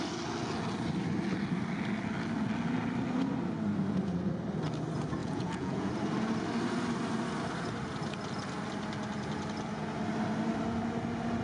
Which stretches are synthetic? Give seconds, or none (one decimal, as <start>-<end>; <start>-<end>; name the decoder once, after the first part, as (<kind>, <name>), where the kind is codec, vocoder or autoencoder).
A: 5.2-5.9 (vocoder, Vocos)